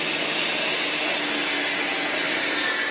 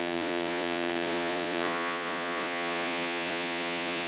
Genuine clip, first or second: first